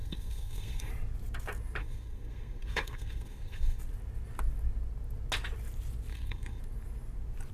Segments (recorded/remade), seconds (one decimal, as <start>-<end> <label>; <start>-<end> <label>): 0.0-0.9 remade; 0.9-1.8 recorded; 1.8-3.8 remade; 3.8-6.1 recorded; 6.1-6.6 remade; 6.6-7.5 recorded